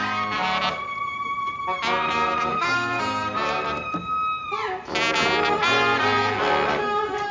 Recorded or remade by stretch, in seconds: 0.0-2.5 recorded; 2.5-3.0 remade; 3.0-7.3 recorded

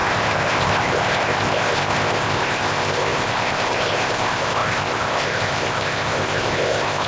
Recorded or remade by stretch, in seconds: 0.0-7.1 remade

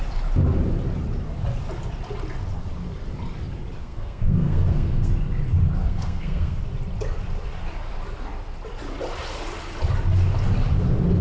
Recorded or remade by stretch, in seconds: 0.0-3.8 recorded; 3.8-5.1 remade; 5.1-5.8 recorded; 5.8-6.6 remade; 6.6-11.2 recorded

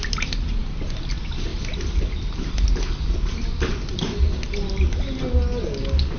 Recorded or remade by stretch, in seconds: 0.0-6.2 recorded

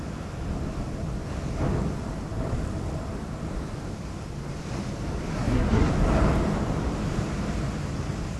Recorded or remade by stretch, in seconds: 0.0-5.3 recorded; 5.3-5.9 remade; 5.9-8.4 recorded